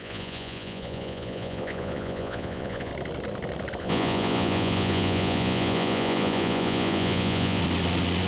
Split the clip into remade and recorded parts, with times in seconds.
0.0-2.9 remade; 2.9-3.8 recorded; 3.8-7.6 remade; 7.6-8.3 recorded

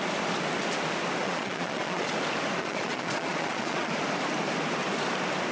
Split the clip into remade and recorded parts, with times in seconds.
0.0-1.2 recorded; 1.2-2.1 remade; 2.1-2.6 recorded; 2.6-3.9 remade; 3.9-5.5 recorded

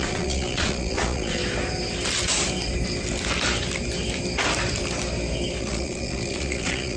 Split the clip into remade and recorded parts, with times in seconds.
0.0-1.4 remade; 1.4-5.6 recorded; 5.6-7.0 remade